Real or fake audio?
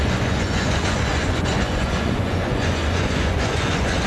fake